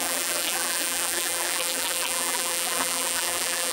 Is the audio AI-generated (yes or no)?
yes